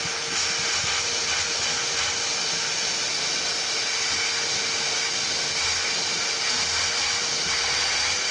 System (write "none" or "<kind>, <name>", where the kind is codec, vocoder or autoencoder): none